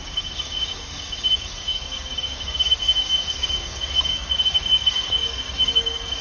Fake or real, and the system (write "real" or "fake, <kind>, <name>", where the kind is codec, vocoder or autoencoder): fake, codec, DAC